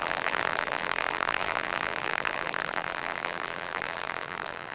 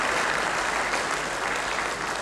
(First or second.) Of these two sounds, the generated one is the first